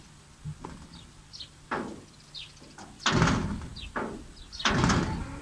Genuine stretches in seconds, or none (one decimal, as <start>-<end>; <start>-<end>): 0.0-5.4